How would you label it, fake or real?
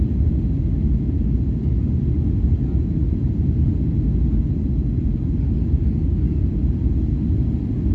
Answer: real